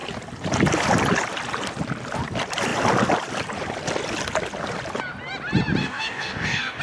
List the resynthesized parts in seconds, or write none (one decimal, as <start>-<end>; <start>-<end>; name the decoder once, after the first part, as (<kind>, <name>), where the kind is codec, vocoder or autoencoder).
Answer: 5.8-6.8 (codec, DAC)